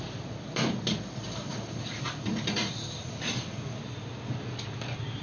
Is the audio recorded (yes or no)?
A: yes